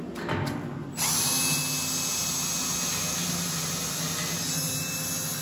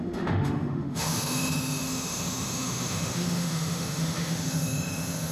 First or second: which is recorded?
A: first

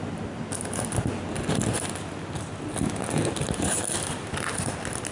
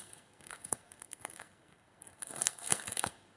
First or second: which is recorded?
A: first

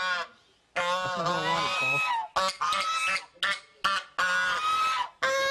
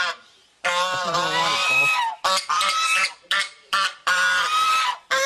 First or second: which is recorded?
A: first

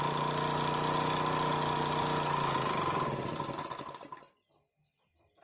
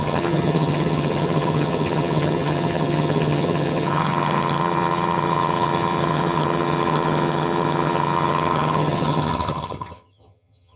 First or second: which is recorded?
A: first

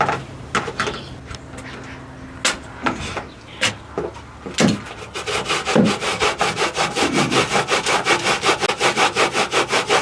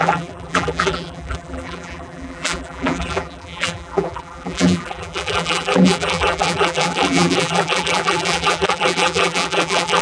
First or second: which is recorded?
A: first